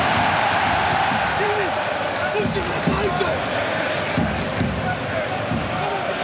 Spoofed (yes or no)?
yes